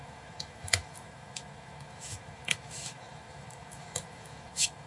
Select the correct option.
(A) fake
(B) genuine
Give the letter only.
A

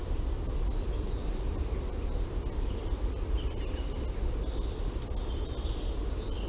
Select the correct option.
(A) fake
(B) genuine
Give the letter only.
B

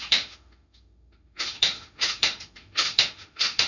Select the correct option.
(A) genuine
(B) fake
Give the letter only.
B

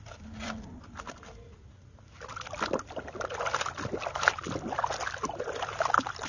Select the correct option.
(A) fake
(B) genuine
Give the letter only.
B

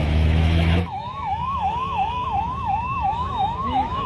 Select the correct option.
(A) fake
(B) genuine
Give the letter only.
A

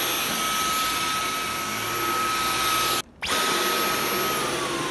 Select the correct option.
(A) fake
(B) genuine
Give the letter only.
B